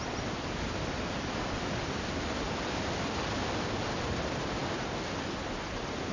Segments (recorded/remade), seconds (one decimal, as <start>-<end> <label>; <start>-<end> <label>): 0.0-6.1 recorded